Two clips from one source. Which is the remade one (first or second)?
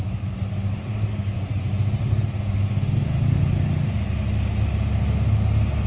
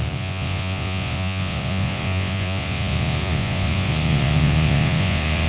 second